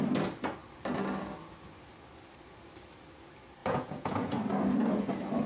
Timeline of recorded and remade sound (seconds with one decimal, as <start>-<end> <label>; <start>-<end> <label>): 0.0-3.6 recorded; 3.6-4.4 remade; 4.4-5.5 recorded